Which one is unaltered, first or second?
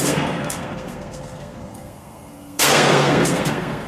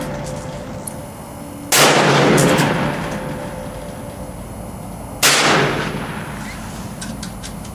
second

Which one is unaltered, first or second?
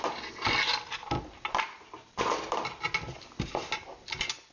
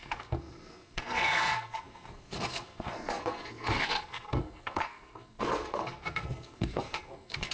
first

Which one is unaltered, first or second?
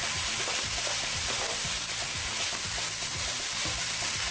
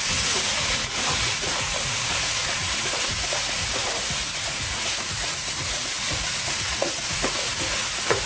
first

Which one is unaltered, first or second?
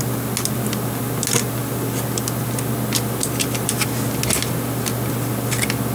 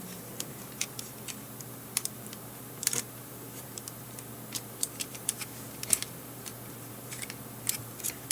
first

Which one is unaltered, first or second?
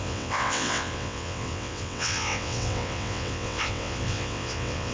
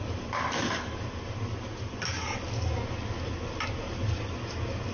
second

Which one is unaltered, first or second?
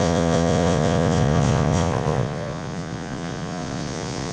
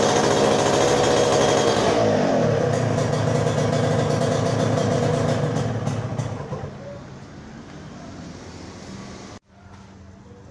second